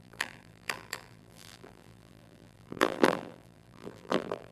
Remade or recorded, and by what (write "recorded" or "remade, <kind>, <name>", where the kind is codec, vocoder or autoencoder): remade, vocoder, BigVGAN v2